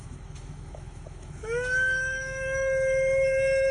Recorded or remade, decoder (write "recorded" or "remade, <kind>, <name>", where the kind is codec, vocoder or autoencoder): remade, autoencoder, DAC-VAE